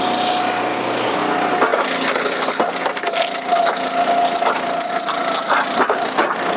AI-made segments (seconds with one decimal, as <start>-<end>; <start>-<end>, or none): 0.7-1.2